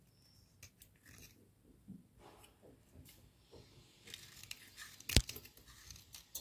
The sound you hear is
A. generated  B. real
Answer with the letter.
B